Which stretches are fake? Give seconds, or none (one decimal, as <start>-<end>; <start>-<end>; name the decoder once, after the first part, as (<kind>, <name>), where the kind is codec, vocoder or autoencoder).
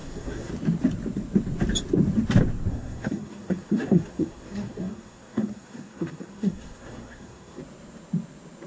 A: 0.0-0.5 (codec, SNAC); 2.7-7.6